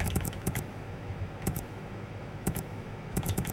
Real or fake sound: fake